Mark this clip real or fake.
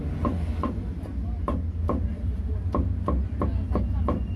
real